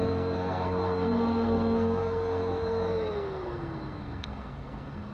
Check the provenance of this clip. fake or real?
fake